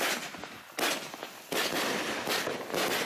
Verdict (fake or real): real